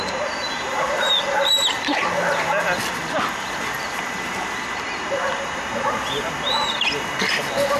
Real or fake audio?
real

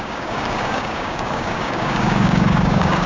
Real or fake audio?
fake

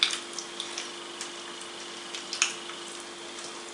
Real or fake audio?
real